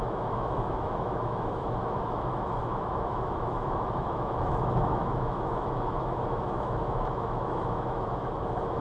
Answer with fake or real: fake